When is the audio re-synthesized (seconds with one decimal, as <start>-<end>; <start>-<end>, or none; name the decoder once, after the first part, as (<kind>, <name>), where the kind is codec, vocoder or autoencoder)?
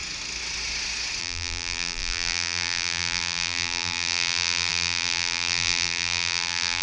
1.2-6.8 (vocoder, BigVGAN v2)